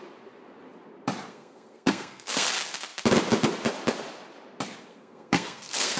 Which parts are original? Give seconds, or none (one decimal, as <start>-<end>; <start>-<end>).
0.0-1.3; 2.5-4.9